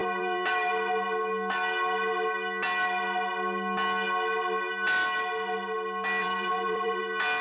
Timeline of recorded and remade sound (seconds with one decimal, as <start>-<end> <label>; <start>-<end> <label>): 0.0-0.7 remade; 0.7-6.2 recorded; 6.2-7.0 remade; 7.0-7.4 recorded